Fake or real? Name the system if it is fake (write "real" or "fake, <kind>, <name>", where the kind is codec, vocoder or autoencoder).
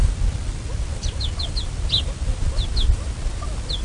fake, vocoder, BigVGAN v2